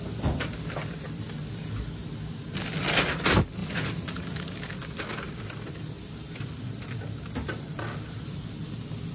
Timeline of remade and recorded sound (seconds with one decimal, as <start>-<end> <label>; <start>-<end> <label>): 0.0-3.6 recorded; 3.6-7.0 remade; 7.0-9.1 recorded